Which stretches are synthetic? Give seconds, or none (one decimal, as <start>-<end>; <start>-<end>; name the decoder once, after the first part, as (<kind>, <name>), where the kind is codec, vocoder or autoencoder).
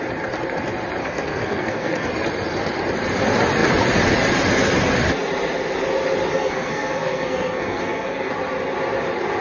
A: 1.0-2.1 (codec, SNAC); 6.3-8.3